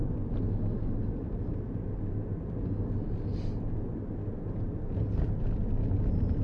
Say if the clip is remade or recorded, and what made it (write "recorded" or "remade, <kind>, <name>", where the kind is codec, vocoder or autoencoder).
recorded